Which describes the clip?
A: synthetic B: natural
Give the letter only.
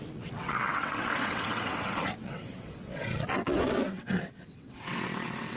A